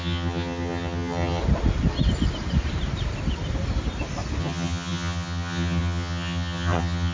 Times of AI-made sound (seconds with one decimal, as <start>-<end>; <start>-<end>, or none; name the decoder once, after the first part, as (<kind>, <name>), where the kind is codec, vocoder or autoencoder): 0.0-1.4 (vocoder, HiFi-GAN); 4.4-7.1